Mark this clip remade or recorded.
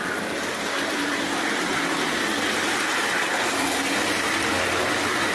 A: recorded